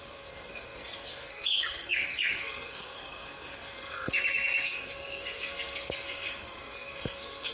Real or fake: fake